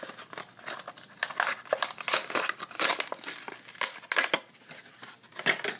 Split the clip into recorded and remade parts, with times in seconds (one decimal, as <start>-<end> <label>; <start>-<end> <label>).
0.0-5.8 recorded